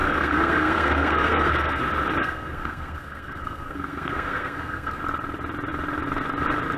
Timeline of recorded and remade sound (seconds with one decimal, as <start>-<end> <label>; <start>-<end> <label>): 0.0-1.8 remade; 1.8-2.2 recorded; 2.2-5.0 remade; 5.0-6.8 recorded

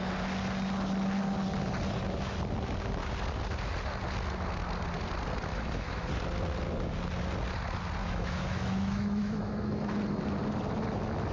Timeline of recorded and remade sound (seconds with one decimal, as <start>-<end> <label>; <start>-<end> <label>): 0.0-5.5 recorded; 5.5-6.1 remade; 6.1-8.0 recorded; 8.0-10.0 remade; 10.0-11.3 recorded

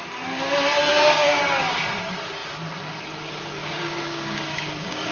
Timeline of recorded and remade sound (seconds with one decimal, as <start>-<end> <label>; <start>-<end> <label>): 0.0-0.9 recorded; 0.9-1.6 remade; 1.6-3.6 recorded; 3.6-5.1 remade

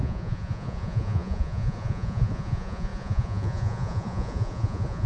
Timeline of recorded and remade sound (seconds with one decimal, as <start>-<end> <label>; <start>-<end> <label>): 0.0-5.1 remade

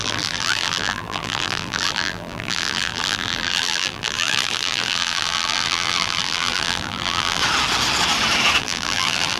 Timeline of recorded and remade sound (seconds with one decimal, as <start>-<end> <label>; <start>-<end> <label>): 0.0-7.4 remade; 7.4-8.6 recorded; 8.6-9.4 remade

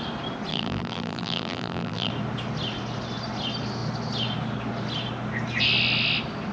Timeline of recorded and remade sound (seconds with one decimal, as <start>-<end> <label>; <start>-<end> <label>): 0.0-0.5 recorded; 0.5-2.1 remade; 2.1-6.5 recorded